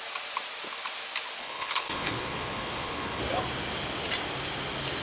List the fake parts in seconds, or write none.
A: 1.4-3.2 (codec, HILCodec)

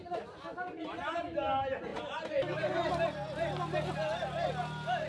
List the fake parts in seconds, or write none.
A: none

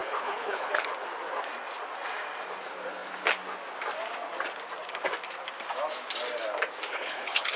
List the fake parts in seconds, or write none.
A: 0.0-0.7 (codec, HILCodec); 6.9-7.6

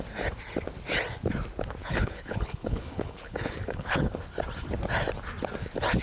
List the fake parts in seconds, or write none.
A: 1.8-4.1 (codec, HILCodec)

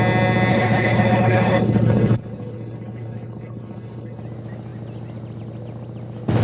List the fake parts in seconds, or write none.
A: 0.5-4.2 (codec, HILCodec)

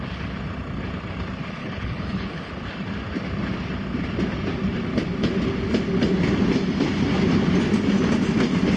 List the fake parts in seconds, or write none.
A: 1.6-2.5 (codec, HILCodec)

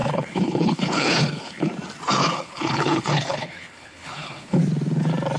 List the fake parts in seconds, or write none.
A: 0.0-1.7 (codec, HILCodec); 2.2-4.6